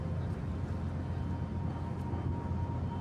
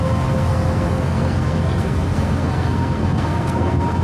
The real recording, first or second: first